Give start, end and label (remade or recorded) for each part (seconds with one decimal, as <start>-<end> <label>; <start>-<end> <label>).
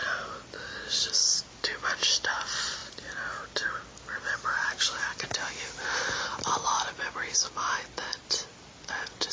0.0-9.3 recorded